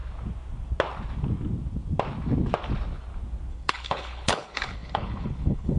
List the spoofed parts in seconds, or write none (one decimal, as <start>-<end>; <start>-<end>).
3.5-5.8